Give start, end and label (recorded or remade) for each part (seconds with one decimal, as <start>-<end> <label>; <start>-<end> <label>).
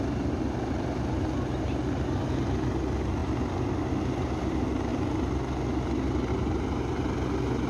0.0-7.7 recorded